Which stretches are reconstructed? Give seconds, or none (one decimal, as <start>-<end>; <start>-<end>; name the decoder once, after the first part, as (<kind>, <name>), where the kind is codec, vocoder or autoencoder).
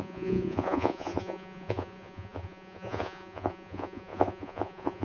0.0-5.0 (vocoder, Vocos)